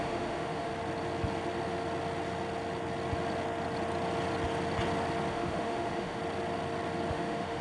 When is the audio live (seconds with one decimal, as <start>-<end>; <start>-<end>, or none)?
0.7-5.3; 6.2-7.1